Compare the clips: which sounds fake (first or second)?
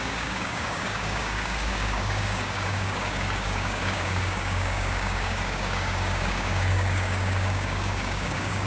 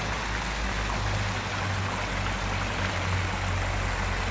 first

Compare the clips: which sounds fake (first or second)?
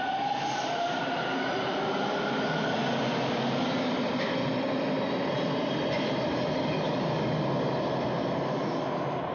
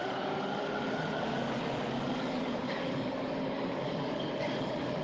second